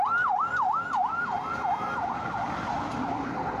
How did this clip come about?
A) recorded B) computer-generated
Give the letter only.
A